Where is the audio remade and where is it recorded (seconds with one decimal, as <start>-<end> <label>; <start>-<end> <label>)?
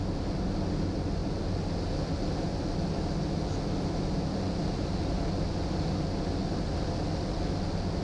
0.0-8.0 recorded